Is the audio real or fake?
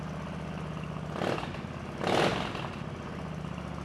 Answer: real